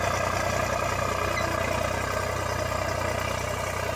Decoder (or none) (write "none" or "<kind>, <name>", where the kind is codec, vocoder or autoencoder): none